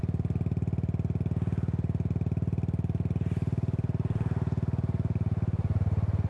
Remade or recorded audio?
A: recorded